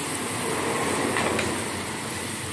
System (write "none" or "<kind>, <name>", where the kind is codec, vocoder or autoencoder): none